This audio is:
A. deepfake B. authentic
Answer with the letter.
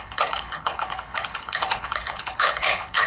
A